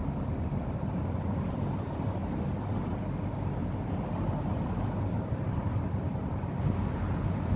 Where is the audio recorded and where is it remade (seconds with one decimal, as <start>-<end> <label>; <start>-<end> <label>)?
0.0-7.6 recorded